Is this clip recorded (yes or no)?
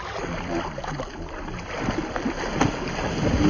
yes